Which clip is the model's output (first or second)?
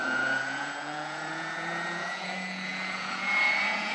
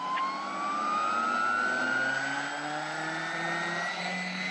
first